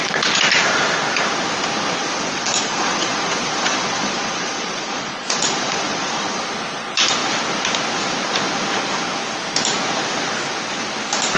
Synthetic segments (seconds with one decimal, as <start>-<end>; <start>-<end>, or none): 2.0-6.4